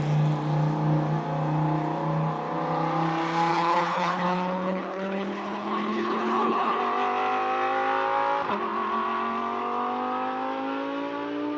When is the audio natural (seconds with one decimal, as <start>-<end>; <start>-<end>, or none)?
0.0-3.5; 6.8-11.6